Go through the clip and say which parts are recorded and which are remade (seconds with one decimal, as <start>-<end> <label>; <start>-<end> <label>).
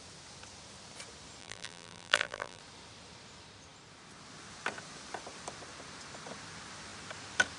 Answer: 0.0-1.4 recorded; 1.4-2.6 remade; 2.6-7.6 recorded